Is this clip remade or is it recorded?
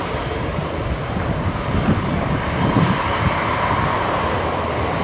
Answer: remade